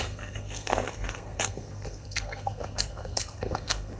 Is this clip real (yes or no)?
no